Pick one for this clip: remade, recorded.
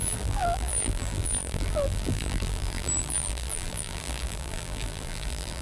remade